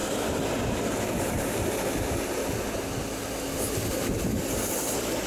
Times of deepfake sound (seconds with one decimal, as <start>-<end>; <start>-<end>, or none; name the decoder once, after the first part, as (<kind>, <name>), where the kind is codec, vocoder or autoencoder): none